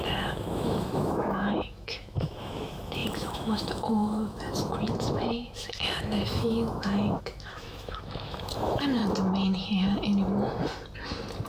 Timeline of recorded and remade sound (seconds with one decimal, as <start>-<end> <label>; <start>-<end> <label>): 0.0-9.0 remade; 9.0-11.5 recorded